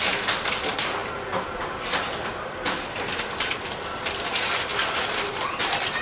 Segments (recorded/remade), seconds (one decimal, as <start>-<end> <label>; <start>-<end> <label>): 0.0-1.0 recorded; 1.0-4.1 remade; 4.1-4.7 recorded; 4.7-5.6 remade; 5.6-6.0 recorded